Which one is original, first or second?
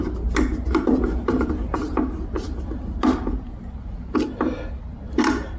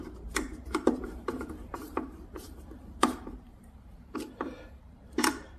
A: first